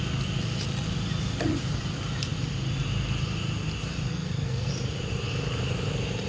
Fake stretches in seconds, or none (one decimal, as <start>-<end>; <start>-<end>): 4.1-4.7